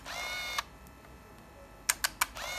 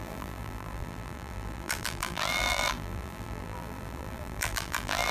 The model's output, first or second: second